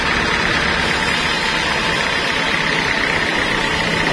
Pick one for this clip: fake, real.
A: real